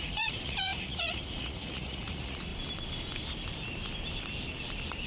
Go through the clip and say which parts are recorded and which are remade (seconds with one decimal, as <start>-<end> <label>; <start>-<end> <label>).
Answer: 0.0-2.5 remade; 2.5-5.1 recorded